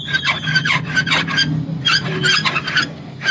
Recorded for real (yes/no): yes